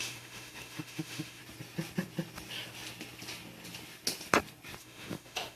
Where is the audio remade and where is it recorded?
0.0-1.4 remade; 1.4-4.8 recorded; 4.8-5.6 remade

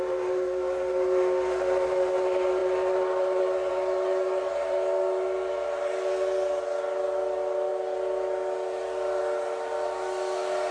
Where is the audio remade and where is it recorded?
0.0-10.7 recorded

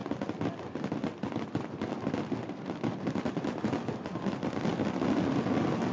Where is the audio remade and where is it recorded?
0.0-5.9 recorded

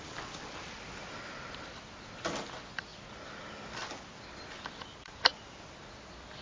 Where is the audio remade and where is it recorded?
0.0-6.4 recorded

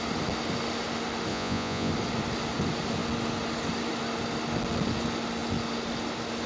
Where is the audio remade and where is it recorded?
0.0-1.3 recorded; 1.3-1.9 remade; 1.9-6.5 recorded